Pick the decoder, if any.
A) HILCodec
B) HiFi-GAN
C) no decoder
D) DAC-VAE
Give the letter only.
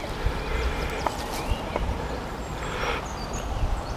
C